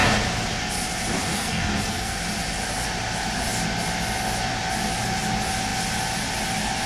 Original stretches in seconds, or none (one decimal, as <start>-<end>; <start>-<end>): 0.0-1.3; 2.2-6.9